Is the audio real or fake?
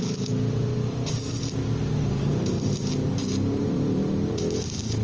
real